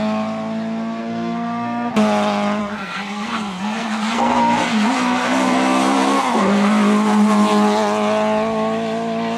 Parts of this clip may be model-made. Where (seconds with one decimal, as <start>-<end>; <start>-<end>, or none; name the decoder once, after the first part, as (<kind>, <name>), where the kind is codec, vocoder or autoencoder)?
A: 1.0-1.9 (codec, SNAC); 2.6-6.7

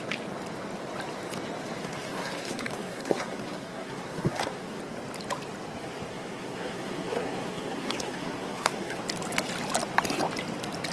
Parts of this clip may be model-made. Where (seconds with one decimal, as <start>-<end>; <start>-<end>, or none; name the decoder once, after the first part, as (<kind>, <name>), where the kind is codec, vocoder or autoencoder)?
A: 1.8-4.8 (codec, SNAC); 6.1-9.0

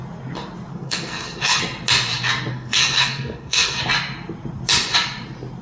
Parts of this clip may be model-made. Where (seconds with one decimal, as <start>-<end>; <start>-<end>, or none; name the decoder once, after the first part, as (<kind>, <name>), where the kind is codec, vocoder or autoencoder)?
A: 0.7-1.6 (codec, SNAC); 2.5-3.8